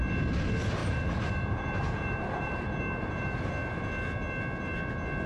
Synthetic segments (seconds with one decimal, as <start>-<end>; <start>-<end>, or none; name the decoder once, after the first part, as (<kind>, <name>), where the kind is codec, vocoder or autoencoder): 0.8-3.5 (vocoder, BigVGAN v2)